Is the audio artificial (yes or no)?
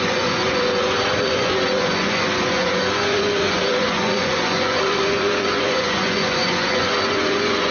yes